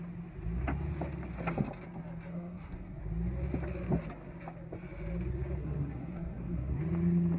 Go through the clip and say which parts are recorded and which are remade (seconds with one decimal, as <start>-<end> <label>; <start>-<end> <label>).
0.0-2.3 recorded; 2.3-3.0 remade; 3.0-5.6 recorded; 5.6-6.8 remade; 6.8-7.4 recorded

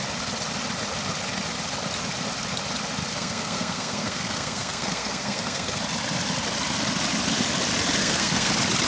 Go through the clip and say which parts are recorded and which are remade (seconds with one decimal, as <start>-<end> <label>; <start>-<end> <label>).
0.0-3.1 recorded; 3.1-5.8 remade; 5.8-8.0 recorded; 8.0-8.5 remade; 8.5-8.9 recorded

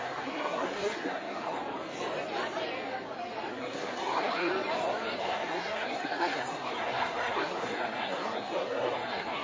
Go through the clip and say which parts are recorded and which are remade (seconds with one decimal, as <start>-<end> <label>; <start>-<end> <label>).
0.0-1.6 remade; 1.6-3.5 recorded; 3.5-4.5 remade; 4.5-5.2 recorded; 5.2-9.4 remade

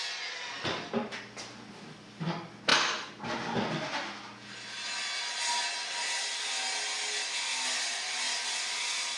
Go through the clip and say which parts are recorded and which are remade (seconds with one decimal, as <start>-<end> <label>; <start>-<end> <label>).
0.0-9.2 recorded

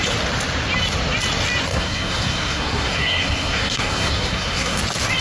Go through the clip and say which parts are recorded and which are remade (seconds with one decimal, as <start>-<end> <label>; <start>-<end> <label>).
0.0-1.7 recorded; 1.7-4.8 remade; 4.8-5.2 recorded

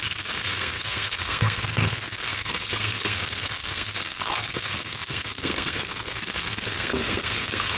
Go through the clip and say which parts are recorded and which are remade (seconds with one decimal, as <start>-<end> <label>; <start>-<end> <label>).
0.0-7.8 remade

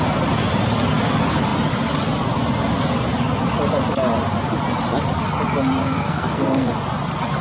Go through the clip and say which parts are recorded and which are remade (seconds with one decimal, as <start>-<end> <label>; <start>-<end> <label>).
0.0-5.8 recorded; 5.8-6.7 remade; 6.7-7.4 recorded

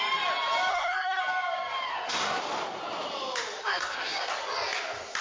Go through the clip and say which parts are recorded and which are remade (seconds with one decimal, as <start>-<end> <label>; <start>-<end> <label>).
0.0-0.7 recorded; 0.7-1.2 remade; 1.2-1.9 recorded; 1.9-2.4 remade; 2.4-3.6 recorded; 3.6-4.3 remade; 4.3-5.2 recorded